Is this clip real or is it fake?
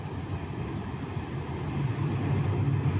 real